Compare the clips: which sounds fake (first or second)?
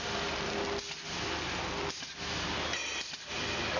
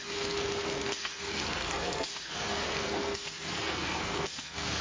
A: second